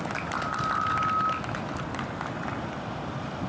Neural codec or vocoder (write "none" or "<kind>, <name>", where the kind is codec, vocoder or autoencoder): none